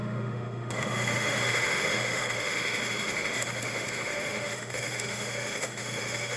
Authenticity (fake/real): fake